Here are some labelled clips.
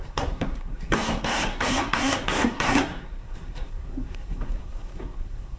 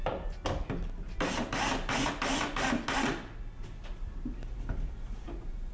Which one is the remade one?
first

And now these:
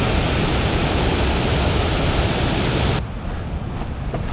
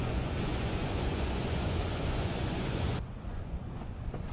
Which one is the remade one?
second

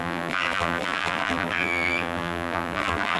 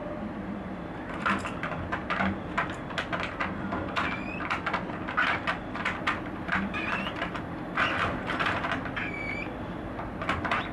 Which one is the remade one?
first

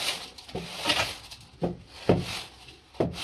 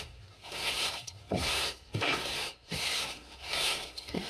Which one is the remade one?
second